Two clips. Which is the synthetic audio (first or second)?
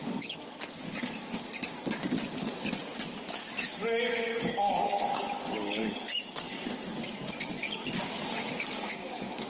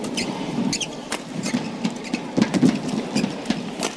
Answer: first